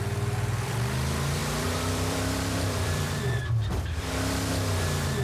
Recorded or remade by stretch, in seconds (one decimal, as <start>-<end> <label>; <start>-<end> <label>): 0.0-1.4 recorded; 1.4-4.5 remade; 4.5-5.2 recorded